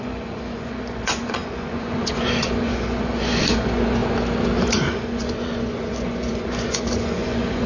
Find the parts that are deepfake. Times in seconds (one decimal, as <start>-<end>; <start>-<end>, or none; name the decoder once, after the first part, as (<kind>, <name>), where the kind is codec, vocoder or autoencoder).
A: 0.0-4.0 (vocoder, Vocos); 4.9-7.7